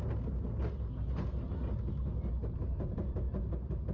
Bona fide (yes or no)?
yes